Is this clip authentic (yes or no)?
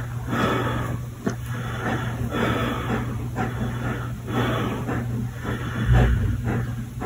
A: yes